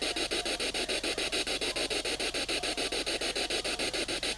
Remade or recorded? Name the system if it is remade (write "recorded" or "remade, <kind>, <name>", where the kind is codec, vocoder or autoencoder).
recorded